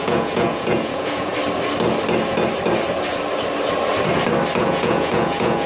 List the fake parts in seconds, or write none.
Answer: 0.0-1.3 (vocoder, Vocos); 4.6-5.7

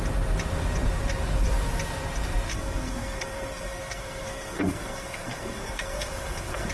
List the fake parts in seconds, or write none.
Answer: 2.5-6.7 (codec, SNAC)

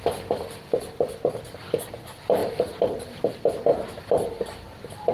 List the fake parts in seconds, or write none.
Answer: 2.4-3.3 (vocoder, BigVGAN v2); 3.7-5.1

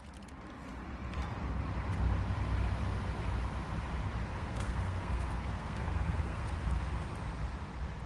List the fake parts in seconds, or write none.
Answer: 4.3-6.8 (codec, SNAC)

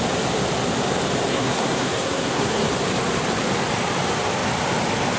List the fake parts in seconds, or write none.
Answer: 1.3-2.7 (codec, SNAC)

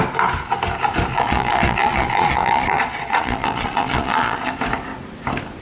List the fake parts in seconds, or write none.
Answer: 1.1-4.5 (vocoder, Vocos)

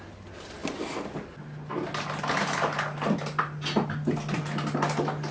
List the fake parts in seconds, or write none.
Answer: none